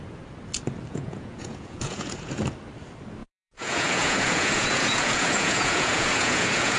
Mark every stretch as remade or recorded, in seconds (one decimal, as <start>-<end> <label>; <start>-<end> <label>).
0.0-0.9 recorded; 0.9-2.4 remade; 2.4-3.2 recorded; 3.2-6.8 remade